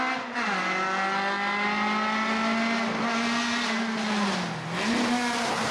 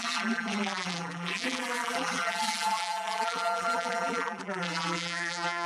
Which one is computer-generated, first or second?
second